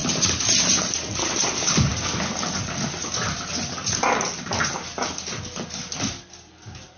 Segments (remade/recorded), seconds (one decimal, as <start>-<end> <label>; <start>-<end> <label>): 0.0-7.0 recorded